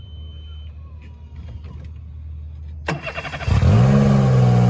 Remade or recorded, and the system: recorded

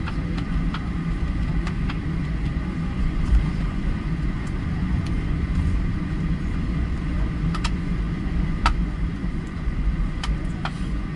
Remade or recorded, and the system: remade, vocoder, Vocos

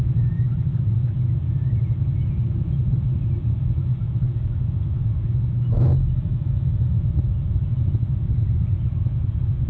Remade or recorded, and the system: recorded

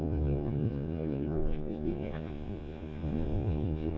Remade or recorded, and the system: remade, vocoder, Vocos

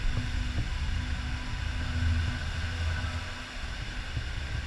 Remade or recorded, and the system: recorded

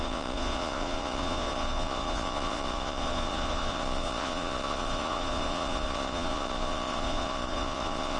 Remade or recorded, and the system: remade, vocoder, Vocos